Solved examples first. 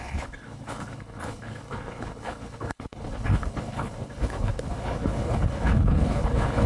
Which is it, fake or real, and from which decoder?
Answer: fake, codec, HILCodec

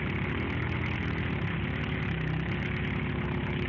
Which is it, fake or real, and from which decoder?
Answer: real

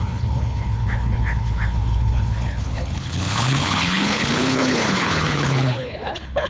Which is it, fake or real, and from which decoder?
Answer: fake, codec, HILCodec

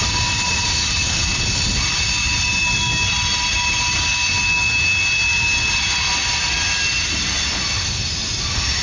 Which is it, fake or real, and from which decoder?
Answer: real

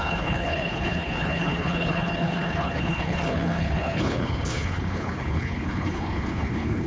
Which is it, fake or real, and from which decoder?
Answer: fake, codec, HILCodec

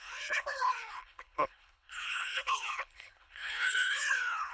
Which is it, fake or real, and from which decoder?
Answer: fake, codec, HILCodec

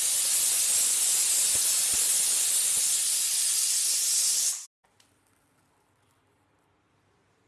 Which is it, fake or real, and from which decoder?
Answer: real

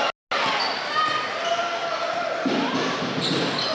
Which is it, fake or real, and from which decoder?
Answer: real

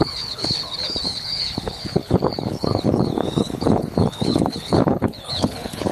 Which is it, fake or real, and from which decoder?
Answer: fake, codec, HILCodec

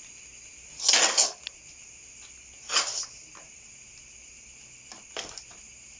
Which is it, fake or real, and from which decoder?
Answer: real